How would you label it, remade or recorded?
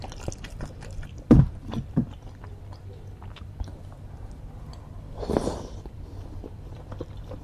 remade